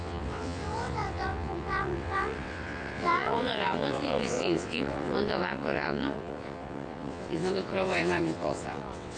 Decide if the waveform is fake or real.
fake